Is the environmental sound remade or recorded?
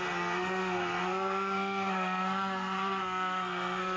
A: remade